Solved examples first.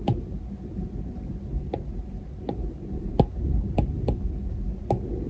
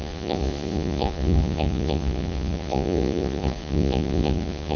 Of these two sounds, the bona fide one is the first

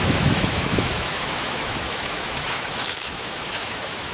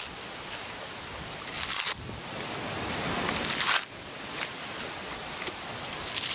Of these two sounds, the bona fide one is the second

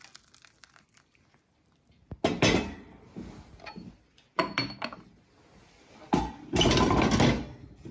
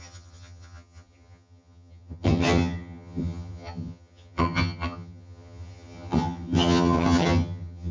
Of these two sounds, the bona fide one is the first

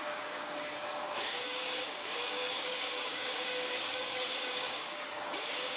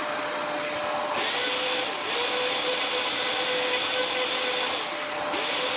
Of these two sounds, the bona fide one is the second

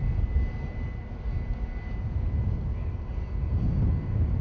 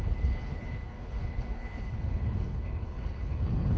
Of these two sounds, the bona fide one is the first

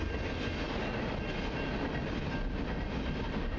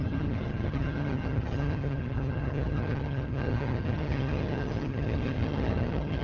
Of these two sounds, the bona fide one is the first